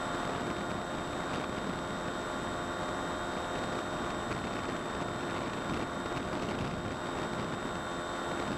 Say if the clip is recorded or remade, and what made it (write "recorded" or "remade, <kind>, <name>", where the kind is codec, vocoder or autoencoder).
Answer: recorded